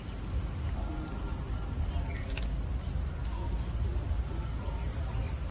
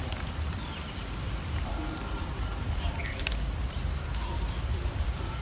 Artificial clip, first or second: second